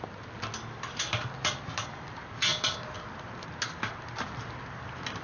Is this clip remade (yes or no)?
no